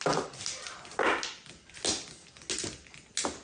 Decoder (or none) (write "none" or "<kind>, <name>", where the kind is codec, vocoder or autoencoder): none